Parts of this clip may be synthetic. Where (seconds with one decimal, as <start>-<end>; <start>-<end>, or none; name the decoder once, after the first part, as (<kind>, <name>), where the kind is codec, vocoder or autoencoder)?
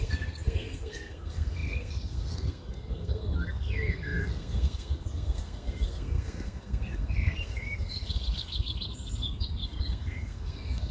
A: 0.0-10.9 (codec, SNAC)